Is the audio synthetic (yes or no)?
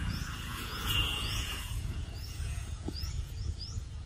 yes